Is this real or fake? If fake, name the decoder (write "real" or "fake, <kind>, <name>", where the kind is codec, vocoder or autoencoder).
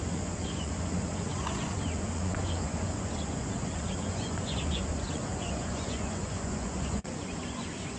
fake, vocoder, Vocos